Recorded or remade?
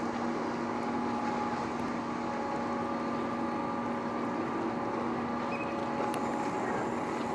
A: recorded